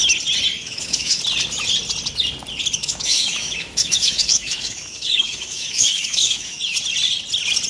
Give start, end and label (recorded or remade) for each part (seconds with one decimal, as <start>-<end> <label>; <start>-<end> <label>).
0.0-0.6 recorded; 0.6-1.2 remade; 1.2-2.8 recorded; 2.8-6.6 remade; 6.6-7.7 recorded